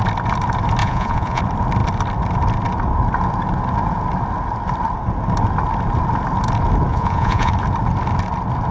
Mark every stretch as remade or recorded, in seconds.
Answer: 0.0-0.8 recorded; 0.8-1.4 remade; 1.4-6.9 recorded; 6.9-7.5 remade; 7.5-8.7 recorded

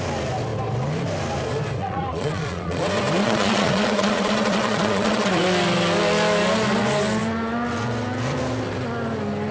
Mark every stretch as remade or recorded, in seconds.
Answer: 0.0-1.8 recorded; 1.8-2.8 remade; 2.8-3.2 recorded; 3.2-5.4 remade; 5.4-9.5 recorded

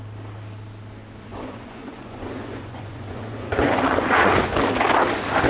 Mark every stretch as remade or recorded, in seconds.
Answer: 0.0-1.3 recorded; 1.3-4.6 remade; 4.6-5.5 recorded

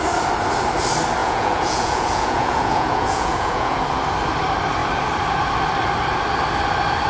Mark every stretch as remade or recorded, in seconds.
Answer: 0.0-1.2 recorded; 1.2-3.8 remade; 3.8-7.1 recorded

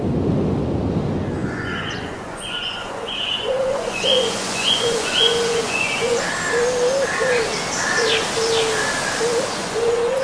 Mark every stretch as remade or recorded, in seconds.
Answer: 0.0-1.4 recorded; 1.4-6.2 remade; 6.2-9.6 recorded; 9.6-10.2 remade

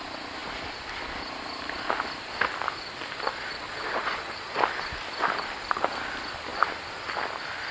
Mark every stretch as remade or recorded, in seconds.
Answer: 0.0-3.5 recorded; 3.5-4.6 remade; 4.6-7.7 recorded

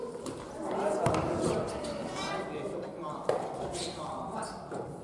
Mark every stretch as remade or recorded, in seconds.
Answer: 0.0-5.0 recorded